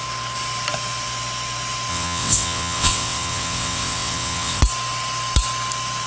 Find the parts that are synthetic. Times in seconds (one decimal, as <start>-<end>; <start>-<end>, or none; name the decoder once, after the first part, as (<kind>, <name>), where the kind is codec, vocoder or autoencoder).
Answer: 1.9-4.6 (vocoder, WaveNeXt)